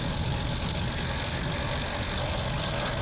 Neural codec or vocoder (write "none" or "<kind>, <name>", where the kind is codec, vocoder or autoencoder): none